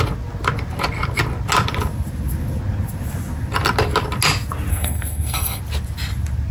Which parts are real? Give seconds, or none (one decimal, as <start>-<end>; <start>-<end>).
0.0-4.7; 5.6-6.5